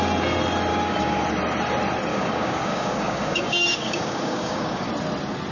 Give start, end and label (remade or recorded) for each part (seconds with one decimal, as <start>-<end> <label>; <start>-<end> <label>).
0.0-0.7 recorded; 0.7-1.2 remade; 1.2-2.1 recorded; 2.1-4.9 remade; 4.9-5.5 recorded